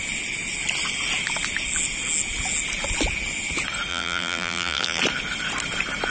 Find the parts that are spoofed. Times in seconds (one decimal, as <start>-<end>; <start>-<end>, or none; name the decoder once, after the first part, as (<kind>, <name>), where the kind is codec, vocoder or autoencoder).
3.9-5.0 (vocoder, BigVGAN v2)